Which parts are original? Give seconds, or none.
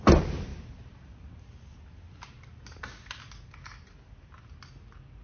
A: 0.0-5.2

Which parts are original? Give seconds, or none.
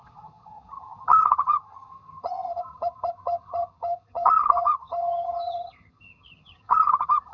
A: none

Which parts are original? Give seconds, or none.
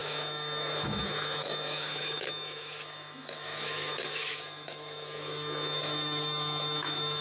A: none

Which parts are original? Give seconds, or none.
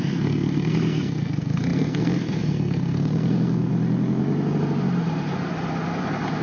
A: 3.7-6.4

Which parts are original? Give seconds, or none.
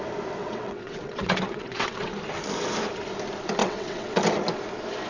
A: 0.0-0.4; 2.1-3.6; 4.2-5.1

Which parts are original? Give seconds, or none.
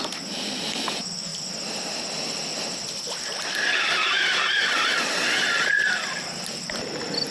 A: 0.0-1.3; 2.0-7.3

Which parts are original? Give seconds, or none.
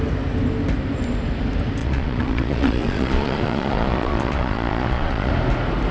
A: 0.0-1.8; 5.3-5.9